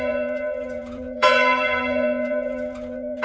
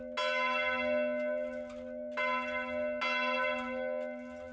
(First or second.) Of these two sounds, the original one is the second